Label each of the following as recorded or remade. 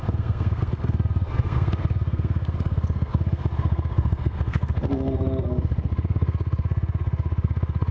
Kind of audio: remade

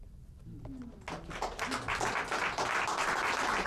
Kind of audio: recorded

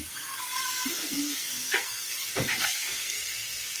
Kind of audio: remade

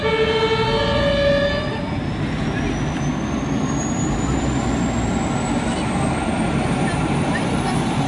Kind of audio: recorded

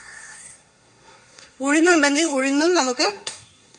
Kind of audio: remade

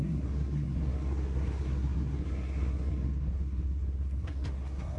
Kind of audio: remade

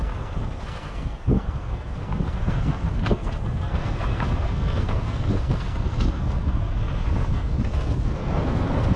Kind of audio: remade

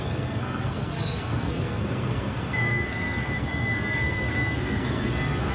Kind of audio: remade